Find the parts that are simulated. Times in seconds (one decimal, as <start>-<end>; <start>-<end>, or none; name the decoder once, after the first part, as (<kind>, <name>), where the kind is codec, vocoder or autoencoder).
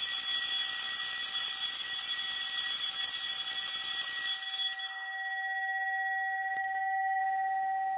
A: 6.6-7.2 (codec, DAC)